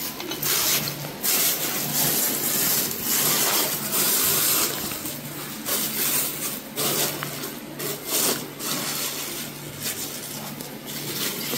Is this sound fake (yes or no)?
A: no